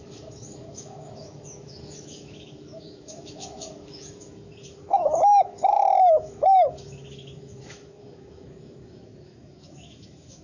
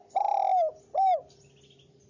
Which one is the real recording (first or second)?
second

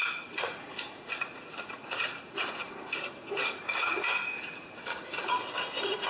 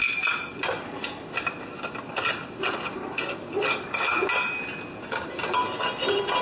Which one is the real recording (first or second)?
second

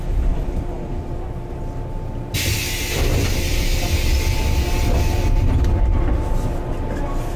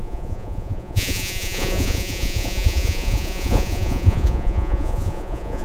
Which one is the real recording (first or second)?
first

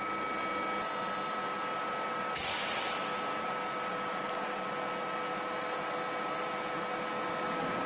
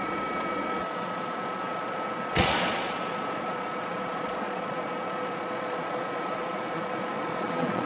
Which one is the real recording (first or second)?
first